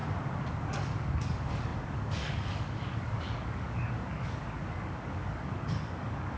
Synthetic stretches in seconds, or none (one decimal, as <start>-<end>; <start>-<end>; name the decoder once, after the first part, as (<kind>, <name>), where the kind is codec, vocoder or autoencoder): 0.5-6.4 (codec, DAC)